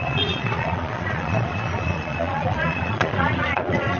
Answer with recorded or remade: remade